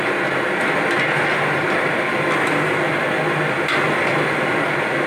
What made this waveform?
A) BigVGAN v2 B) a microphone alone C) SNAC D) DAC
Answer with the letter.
B